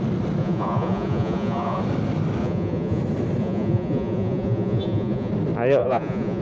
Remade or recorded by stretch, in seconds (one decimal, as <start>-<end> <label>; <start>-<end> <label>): 0.0-0.4 recorded; 0.4-1.8 remade; 1.8-2.4 recorded; 2.4-3.0 remade; 3.0-3.4 recorded; 3.4-5.3 remade; 5.3-5.8 recorded; 5.8-6.4 remade